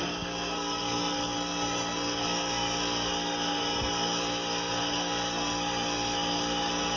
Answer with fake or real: fake